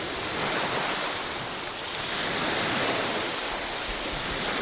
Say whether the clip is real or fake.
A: fake